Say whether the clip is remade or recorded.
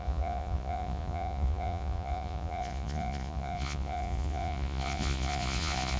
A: remade